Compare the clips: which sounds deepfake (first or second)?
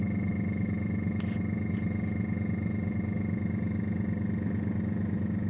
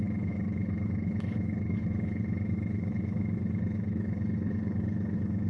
second